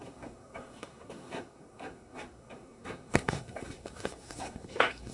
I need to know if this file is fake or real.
fake